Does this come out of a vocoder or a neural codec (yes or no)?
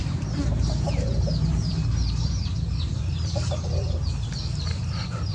yes